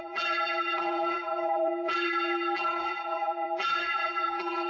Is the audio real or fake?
fake